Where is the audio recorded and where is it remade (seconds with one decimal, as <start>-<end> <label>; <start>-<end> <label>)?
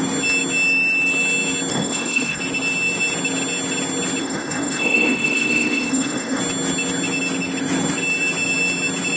0.0-1.7 recorded; 1.7-2.4 remade; 2.4-4.2 recorded; 4.2-6.4 remade; 6.4-9.2 recorded